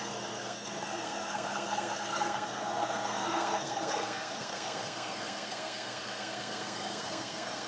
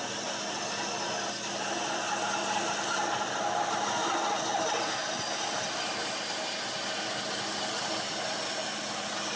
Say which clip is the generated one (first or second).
first